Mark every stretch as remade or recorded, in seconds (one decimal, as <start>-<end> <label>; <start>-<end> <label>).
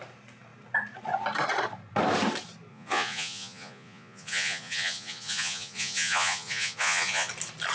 0.0-2.7 recorded; 2.7-7.3 remade; 7.3-7.7 recorded